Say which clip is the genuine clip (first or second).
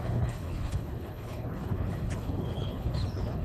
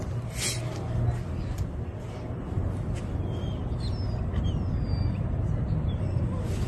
second